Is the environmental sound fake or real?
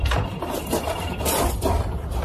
real